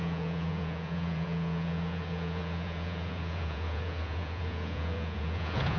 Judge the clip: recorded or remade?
remade